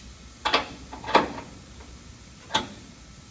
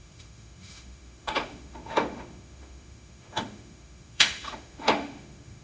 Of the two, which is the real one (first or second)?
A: first